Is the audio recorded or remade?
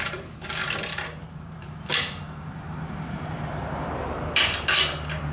remade